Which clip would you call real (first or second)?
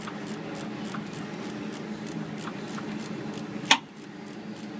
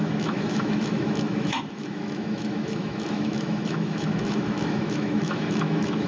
first